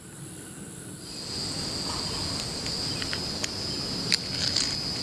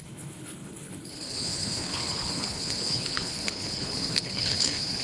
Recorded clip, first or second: first